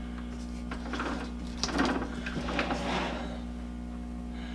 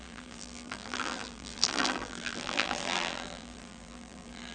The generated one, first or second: second